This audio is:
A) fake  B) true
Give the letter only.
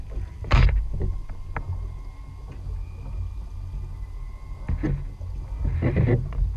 B